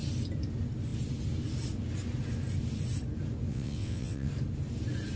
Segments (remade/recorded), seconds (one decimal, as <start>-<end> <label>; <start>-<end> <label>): 0.0-3.5 recorded; 3.5-4.3 remade; 4.3-5.2 recorded